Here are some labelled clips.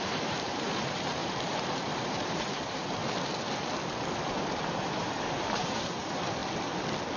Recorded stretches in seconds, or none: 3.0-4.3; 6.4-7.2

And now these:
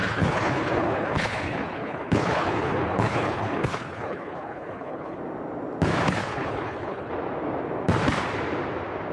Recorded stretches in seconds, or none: 5.2-6.2; 7.1-9.1

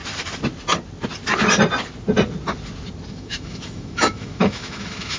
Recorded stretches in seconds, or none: 0.0-3.1

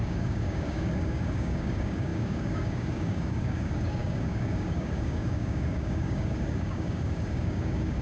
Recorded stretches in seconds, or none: none